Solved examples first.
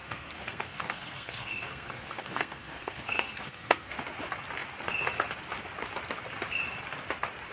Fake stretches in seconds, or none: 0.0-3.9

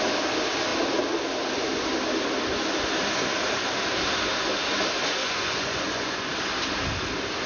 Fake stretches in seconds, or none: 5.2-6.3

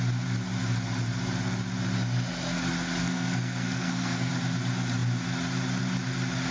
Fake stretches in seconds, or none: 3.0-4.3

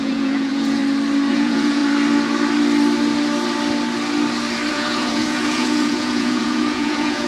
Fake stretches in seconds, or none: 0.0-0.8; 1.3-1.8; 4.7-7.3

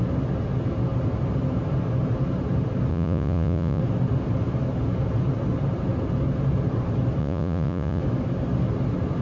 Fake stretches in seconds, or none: 2.9-3.8; 7.2-8.0

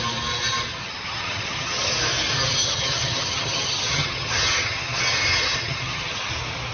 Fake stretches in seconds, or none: 0.7-1.9; 2.6-6.3